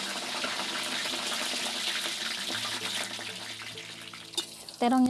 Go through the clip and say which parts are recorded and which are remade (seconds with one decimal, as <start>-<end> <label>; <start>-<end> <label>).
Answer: 0.0-5.1 recorded